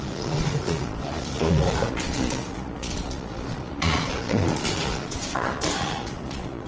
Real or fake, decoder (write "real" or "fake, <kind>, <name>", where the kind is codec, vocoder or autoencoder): fake, vocoder, Vocos